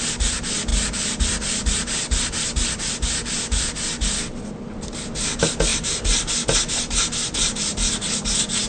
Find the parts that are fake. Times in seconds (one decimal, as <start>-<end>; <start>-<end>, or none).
0.7-4.4; 5.7-6.3